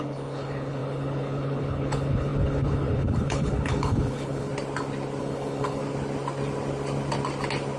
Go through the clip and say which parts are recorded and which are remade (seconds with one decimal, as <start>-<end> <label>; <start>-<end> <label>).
0.0-4.5 remade; 4.5-5.2 recorded; 5.2-5.8 remade; 5.8-7.8 recorded